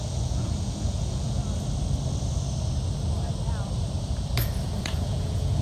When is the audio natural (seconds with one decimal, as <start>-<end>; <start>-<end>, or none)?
1.4-4.8